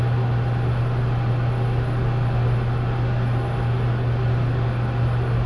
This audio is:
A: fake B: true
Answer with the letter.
B